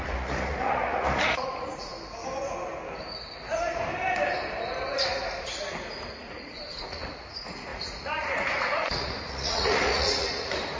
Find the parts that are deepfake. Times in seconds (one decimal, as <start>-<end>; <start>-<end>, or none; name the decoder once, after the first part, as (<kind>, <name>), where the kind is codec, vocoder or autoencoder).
0.0-1.9 (vocoder, Vocos); 6.1-10.8